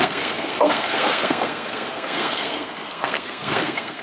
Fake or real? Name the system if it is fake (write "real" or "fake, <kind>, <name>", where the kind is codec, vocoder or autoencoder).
fake, codec, SNAC